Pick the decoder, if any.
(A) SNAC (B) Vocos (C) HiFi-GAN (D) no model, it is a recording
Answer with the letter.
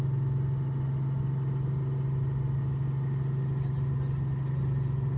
D